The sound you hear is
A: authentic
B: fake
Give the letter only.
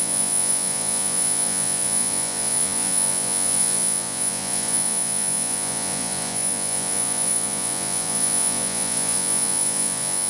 B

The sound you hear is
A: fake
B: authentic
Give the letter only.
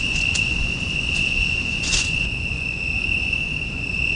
A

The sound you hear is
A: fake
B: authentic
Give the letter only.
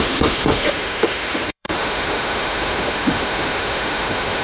A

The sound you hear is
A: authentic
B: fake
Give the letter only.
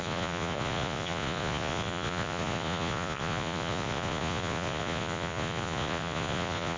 B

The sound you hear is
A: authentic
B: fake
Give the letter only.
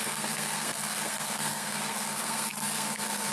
B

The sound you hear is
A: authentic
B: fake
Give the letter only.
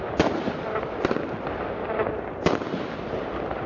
A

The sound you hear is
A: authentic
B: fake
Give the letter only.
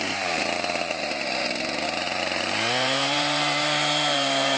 B